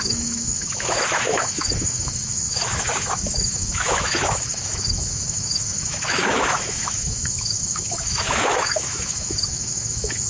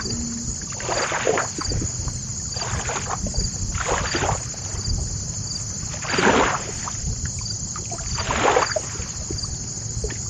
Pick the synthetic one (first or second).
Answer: first